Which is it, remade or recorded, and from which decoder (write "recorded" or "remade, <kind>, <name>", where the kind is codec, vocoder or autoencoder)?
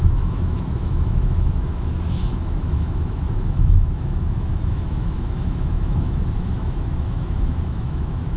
remade, autoencoder, DAC-VAE